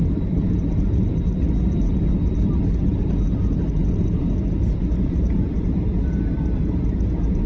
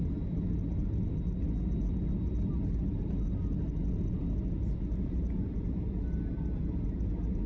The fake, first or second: first